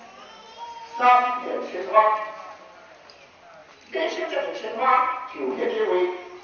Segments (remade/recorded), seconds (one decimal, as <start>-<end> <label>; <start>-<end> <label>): 0.0-6.4 recorded